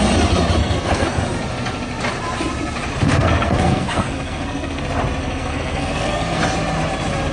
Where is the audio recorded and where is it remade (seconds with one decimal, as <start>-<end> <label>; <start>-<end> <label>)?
0.0-0.6 recorded; 0.6-1.2 remade; 1.2-3.0 recorded; 3.0-4.8 remade; 4.8-5.2 recorded; 5.2-6.4 remade; 6.4-7.3 recorded